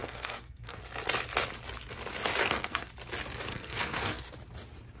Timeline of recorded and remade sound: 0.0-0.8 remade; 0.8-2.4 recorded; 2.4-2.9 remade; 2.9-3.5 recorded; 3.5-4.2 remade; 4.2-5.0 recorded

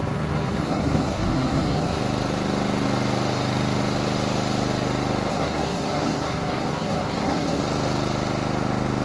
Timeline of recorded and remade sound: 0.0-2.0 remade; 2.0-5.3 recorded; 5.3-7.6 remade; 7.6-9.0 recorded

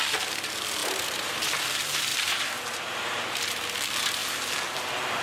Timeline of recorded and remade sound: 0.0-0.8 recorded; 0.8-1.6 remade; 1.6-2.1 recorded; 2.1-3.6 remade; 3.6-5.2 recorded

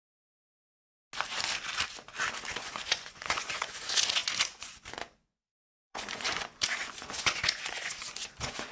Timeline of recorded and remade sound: 0.0-2.6 recorded; 2.6-8.7 remade

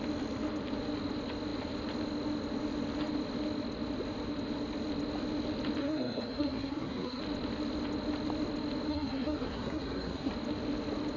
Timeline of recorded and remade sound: 0.0-5.8 recorded; 5.8-7.2 remade; 7.2-8.9 recorded; 8.9-10.3 remade; 10.3-11.2 recorded